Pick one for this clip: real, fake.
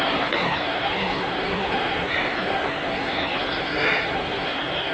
fake